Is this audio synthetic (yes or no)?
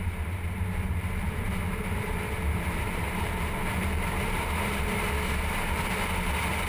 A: yes